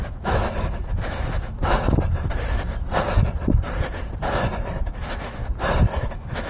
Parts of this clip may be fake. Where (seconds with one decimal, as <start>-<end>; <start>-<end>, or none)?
0.0-1.6; 5.0-5.4; 6.1-6.5